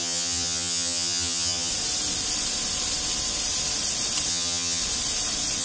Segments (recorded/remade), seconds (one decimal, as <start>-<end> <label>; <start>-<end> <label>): 0.0-1.7 remade; 1.7-4.3 recorded; 4.3-4.8 remade; 4.8-5.6 recorded